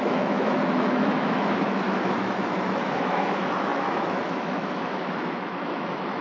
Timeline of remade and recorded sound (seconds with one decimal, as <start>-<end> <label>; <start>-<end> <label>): 0.0-6.2 remade